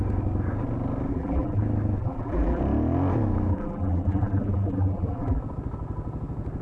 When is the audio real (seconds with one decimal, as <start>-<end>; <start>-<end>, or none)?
0.0-1.1; 1.6-2.0; 2.6-3.5; 5.4-6.6